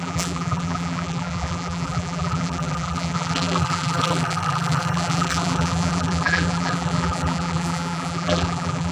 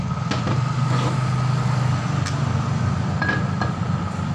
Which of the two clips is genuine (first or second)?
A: second